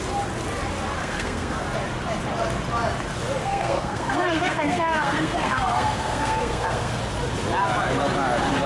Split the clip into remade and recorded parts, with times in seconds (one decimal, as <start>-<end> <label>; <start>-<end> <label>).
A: 0.0-1.0 recorded; 1.0-1.6 remade; 1.6-3.4 recorded; 3.4-7.0 remade; 7.0-8.7 recorded